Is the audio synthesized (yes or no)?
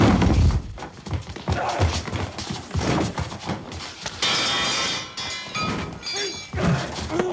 no